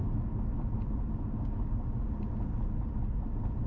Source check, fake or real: real